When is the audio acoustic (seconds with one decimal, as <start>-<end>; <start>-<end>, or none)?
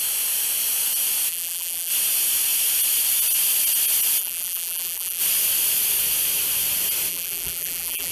0.0-1.3; 1.9-4.2; 5.2-7.1